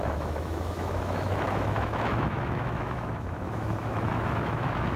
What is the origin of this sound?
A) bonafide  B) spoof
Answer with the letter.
B